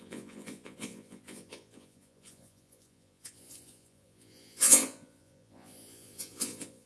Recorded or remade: remade